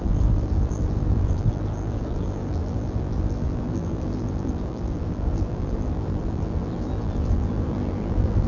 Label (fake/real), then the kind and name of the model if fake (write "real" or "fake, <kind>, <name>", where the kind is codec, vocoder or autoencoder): fake, vocoder, BigVGAN v2